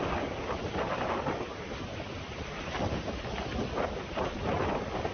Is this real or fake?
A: real